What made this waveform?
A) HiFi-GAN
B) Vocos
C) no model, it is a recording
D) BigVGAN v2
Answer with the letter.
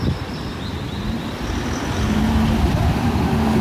D